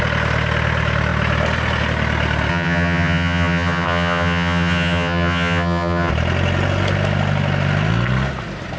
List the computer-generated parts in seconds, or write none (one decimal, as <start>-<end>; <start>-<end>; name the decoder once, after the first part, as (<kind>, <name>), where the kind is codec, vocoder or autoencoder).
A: 2.5-6.1 (vocoder, HiFi-GAN)